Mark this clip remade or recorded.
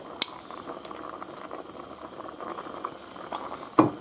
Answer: recorded